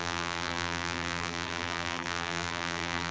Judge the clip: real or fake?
fake